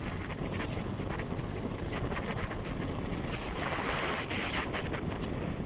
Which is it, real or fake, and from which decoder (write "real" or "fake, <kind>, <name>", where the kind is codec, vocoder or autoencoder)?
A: real